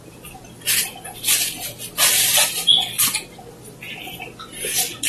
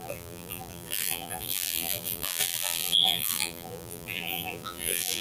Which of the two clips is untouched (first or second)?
first